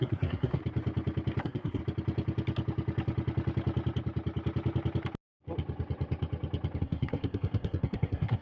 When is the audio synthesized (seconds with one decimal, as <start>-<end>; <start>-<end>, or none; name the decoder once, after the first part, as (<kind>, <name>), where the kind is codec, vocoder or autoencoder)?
0.0-0.6 (codec, SNAC); 1.4-1.8; 6.8-8.4